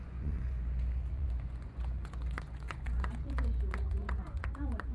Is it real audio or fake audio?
fake